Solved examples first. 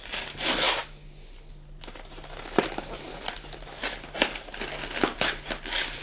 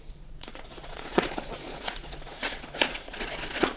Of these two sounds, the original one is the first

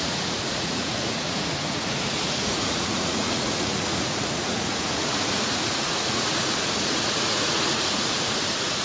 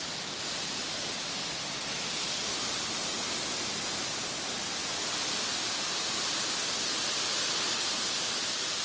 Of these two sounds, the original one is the second